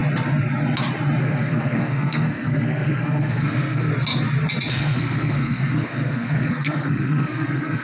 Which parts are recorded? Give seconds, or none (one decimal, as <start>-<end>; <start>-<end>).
0.0-1.2; 3.9-4.7